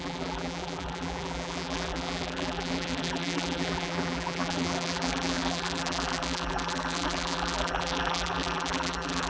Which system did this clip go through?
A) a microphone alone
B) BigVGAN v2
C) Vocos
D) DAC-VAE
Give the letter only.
B